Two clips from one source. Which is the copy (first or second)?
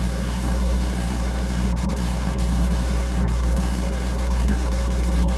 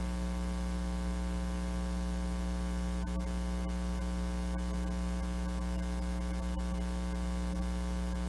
first